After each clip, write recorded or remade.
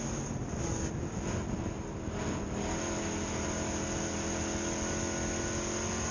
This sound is recorded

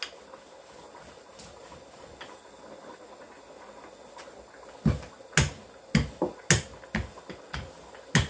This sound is recorded